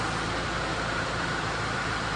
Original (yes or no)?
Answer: no